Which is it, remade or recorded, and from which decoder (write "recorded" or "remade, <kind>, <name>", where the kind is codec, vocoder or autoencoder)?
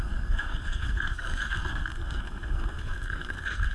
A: remade, codec, SNAC